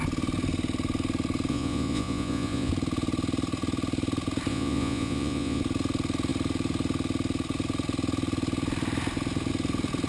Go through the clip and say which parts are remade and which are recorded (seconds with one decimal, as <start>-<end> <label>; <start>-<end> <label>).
0.0-1.5 recorded; 1.5-2.7 remade; 2.7-4.5 recorded; 4.5-5.6 remade; 5.6-10.1 recorded